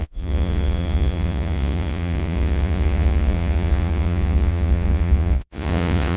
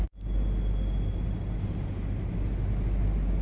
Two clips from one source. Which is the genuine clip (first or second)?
second